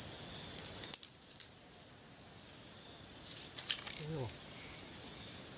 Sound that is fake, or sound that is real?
real